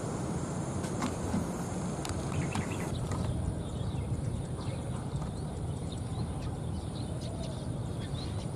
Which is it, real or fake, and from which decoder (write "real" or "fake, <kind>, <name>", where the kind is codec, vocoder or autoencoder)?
fake, vocoder, BigVGAN v2